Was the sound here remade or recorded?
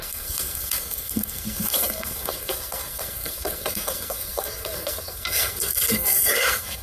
remade